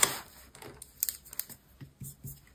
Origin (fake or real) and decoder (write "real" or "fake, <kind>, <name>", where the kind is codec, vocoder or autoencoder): real